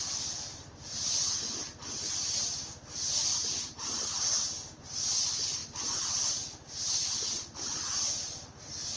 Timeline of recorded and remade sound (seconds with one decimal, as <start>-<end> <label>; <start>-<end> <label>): 0.0-9.0 recorded